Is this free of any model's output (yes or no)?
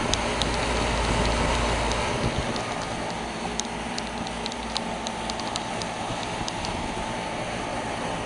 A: yes